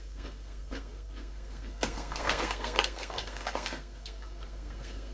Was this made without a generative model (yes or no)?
no